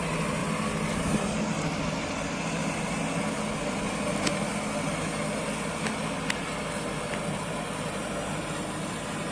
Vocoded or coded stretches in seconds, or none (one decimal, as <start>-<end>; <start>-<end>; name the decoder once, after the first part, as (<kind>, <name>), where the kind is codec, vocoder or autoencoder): none